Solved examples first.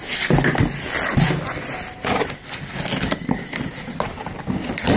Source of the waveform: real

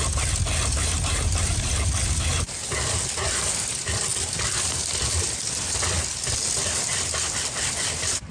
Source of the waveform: real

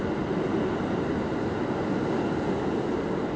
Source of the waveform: real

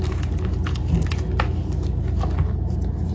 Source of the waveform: real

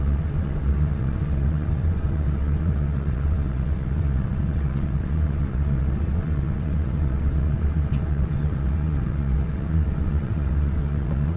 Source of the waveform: fake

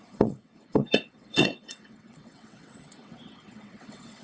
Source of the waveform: fake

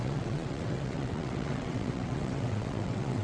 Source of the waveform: fake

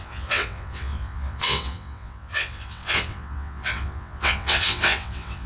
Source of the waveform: fake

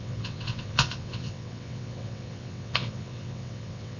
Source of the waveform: fake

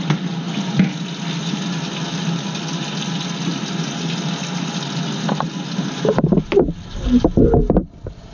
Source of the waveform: real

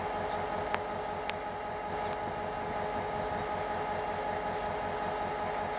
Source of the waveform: real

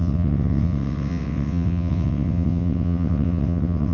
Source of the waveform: fake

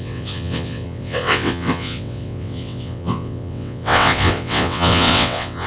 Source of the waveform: fake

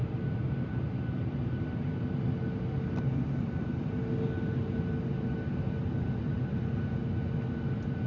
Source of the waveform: real